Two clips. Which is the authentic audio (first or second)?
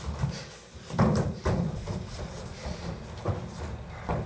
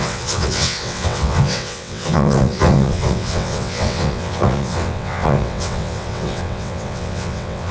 first